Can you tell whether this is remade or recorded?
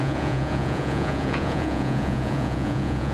remade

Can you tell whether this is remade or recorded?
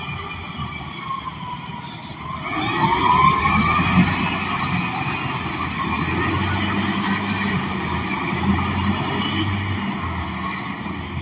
recorded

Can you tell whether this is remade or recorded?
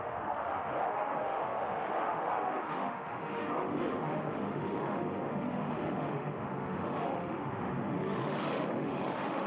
remade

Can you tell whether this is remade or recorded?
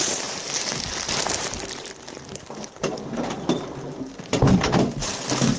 remade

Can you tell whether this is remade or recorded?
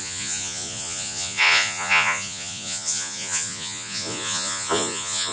remade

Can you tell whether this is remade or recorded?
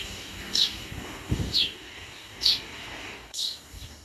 remade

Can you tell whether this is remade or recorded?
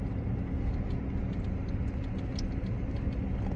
recorded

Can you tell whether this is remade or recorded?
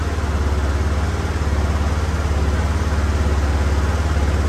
recorded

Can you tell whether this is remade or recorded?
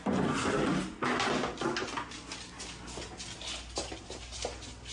recorded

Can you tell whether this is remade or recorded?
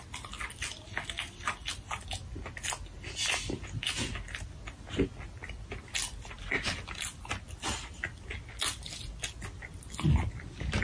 recorded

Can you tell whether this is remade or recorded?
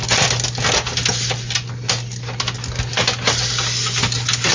recorded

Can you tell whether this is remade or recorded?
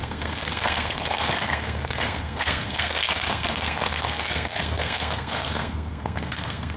remade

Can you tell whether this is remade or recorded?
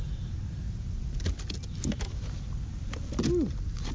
recorded